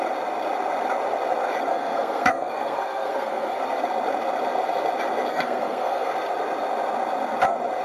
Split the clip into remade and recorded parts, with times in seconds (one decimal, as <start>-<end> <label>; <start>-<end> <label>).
0.0-1.7 recorded; 1.7-3.6 remade; 3.6-5.3 recorded; 5.3-6.1 remade; 6.1-7.8 recorded